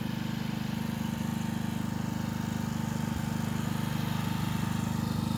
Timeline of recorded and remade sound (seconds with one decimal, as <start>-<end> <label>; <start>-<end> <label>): 0.0-5.4 recorded